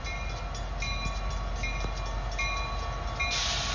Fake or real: real